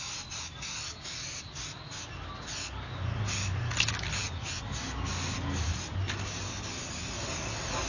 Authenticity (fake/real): real